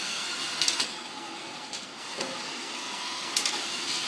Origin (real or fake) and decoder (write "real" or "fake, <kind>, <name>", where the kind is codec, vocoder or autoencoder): fake, codec, SNAC